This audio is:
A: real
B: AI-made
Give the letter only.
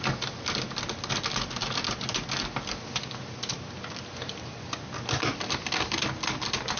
A